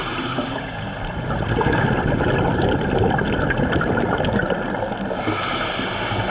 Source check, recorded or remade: recorded